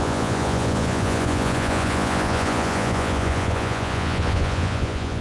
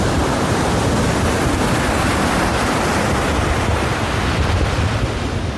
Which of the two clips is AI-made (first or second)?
first